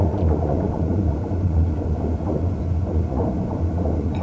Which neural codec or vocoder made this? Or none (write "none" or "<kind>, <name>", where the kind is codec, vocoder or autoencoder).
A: vocoder, Vocos